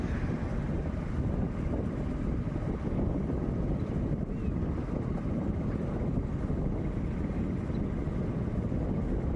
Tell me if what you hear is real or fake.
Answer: real